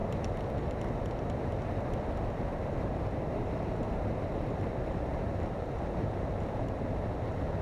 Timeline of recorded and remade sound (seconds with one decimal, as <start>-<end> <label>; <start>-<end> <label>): 0.0-2.5 recorded; 2.5-7.1 remade; 7.1-7.6 recorded